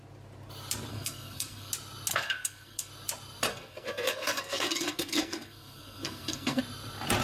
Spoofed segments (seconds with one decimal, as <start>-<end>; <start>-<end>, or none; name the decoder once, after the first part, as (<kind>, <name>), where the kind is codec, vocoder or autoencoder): 0.9-1.7 (codec, SNAC); 2.1-2.9; 3.5-6.6